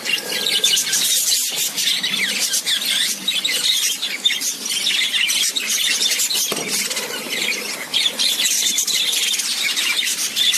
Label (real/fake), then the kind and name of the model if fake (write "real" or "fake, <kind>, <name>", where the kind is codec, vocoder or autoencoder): fake, vocoder, BigVGAN v2